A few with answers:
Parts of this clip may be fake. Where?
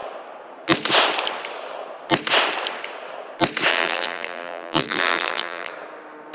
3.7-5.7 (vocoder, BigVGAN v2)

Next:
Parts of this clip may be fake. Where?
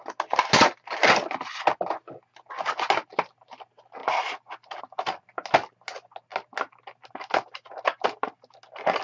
none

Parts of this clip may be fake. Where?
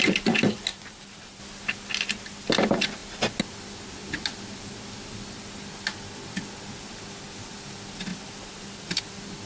0.7-1.4 (vocoder, BigVGAN v2); 8.1-9.0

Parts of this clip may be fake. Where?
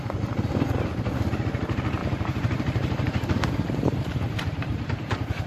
2.0-5.5 (vocoder, BigVGAN v2)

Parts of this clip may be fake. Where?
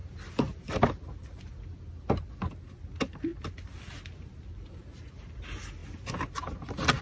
none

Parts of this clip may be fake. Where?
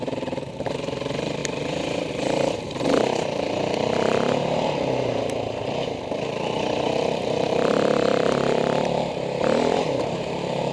0.0-1.4 (vocoder, BigVGAN v2); 2.1-10.7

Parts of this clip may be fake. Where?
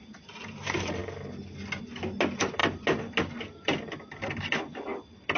none